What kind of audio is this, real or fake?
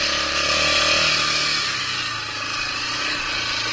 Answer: real